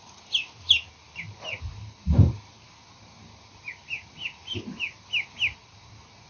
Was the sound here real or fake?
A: real